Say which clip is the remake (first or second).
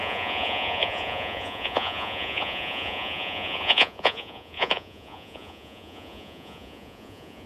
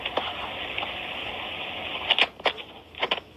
first